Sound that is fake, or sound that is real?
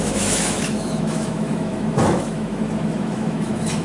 fake